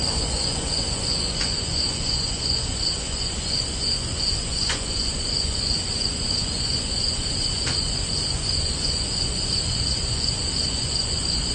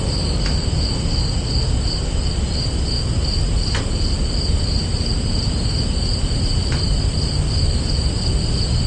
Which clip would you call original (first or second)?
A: second